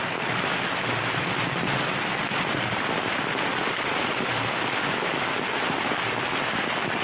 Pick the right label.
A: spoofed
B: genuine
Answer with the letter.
B